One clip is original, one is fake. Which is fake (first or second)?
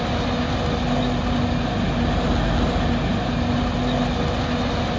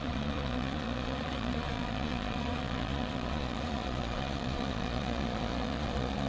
second